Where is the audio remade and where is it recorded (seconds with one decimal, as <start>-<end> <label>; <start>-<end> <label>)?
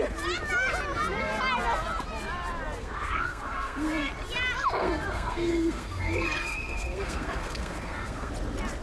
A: 0.0-2.8 recorded; 2.8-4.1 remade; 4.1-4.8 recorded; 4.8-8.3 remade; 8.3-8.8 recorded